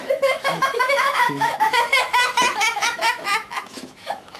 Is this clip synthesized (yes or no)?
yes